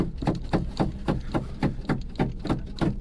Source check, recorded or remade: recorded